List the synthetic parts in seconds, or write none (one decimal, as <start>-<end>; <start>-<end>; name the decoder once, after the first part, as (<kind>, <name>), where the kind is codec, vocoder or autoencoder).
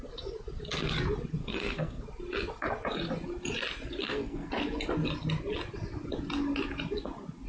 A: 1.4-2.0 (codec, SNAC); 4.0-4.5